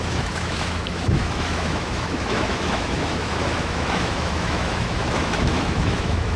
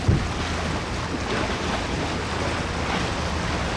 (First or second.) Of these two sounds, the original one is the second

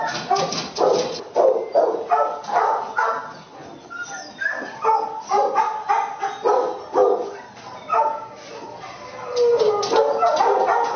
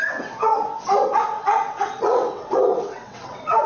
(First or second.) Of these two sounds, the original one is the first